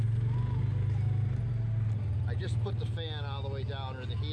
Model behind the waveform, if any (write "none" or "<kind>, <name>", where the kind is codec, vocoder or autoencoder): none